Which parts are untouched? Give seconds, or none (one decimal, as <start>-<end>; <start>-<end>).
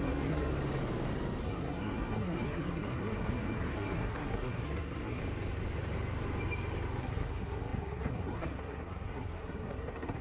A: 0.5-1.4; 5.2-7.0